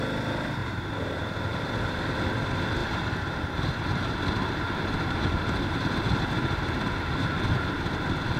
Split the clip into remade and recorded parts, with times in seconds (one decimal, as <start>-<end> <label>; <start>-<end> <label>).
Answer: 0.0-0.6 recorded; 0.6-1.6 remade; 1.6-2.8 recorded; 2.8-6.9 remade; 6.9-8.4 recorded